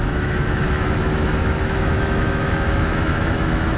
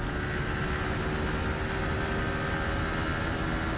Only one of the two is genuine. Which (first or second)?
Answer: second